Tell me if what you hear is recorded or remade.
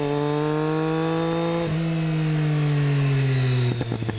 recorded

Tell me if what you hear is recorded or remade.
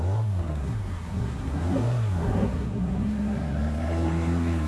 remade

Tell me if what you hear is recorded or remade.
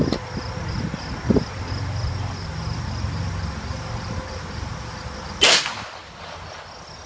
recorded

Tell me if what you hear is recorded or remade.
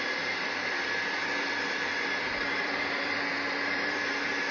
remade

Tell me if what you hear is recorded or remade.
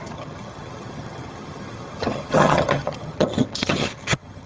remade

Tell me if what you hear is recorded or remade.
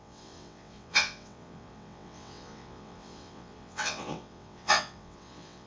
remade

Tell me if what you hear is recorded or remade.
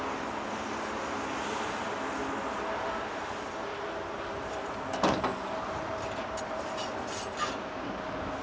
recorded